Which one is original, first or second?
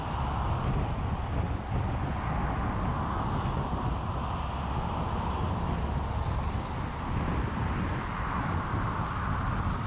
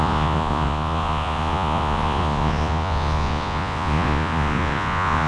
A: first